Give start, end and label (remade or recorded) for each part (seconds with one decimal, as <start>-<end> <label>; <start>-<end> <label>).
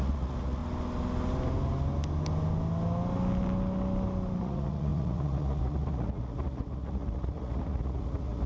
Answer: 0.0-0.6 remade; 0.6-4.4 recorded; 4.4-8.5 remade